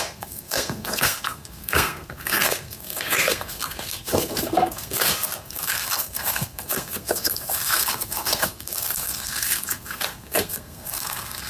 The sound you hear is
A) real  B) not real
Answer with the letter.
B